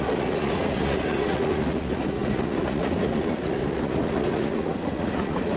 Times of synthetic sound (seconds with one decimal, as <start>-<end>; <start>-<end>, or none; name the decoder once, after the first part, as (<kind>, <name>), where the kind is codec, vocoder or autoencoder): 0.0-5.6 (vocoder, Vocos)